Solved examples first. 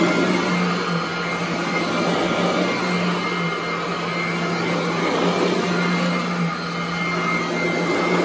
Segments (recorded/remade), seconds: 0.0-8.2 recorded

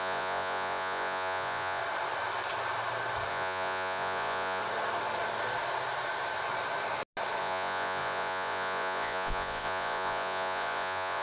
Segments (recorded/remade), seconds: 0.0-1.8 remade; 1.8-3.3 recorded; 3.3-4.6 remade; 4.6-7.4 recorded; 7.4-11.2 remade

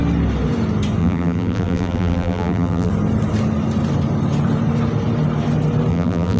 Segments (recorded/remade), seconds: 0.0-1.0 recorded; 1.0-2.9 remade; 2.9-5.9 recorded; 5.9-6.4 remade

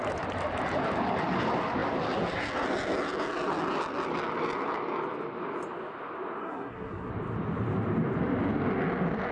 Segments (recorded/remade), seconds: 0.0-6.4 recorded; 6.4-7.1 remade; 7.1-9.3 recorded

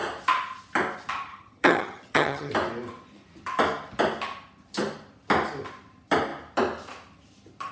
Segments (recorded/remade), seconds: 0.0-1.3 recorded; 1.3-2.5 remade; 2.5-7.7 recorded

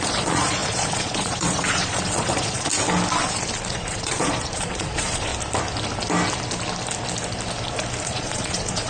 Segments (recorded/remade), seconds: 0.0-2.7 remade; 2.7-3.7 recorded; 3.7-5.3 remade; 5.3-8.0 recorded; 8.0-8.9 remade